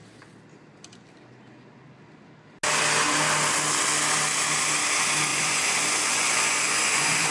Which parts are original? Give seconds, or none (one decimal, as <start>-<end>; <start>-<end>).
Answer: 0.0-5.3